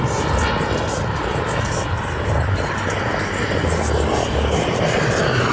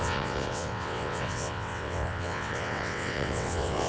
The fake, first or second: second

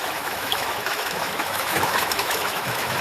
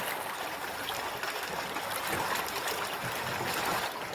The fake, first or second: first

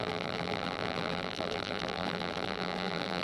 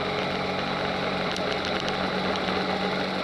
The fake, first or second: first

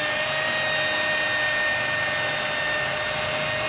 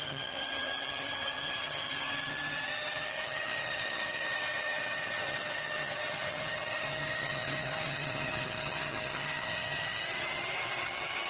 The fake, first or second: second